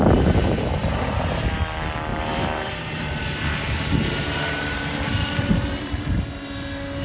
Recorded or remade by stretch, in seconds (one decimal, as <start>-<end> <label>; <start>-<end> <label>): 0.0-0.8 recorded; 0.8-1.6 remade; 1.6-2.1 recorded; 2.1-6.3 remade; 6.3-7.0 recorded